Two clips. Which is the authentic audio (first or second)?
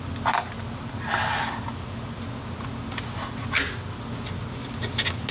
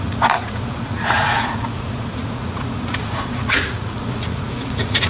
first